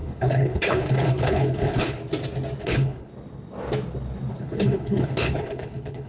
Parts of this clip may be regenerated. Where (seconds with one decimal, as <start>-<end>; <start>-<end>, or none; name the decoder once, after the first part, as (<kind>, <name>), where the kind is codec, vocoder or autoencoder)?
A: 0.0-2.0 (codec, HILCodec); 2.6-3.1; 4.3-6.1